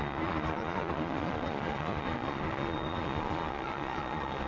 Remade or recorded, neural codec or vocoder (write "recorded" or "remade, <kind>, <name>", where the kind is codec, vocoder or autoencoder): remade, vocoder, Vocos